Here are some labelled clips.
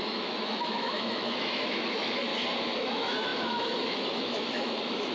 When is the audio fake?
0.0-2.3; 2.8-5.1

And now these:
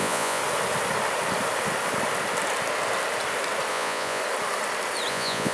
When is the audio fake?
0.0-0.4; 3.7-4.2; 5.1-5.5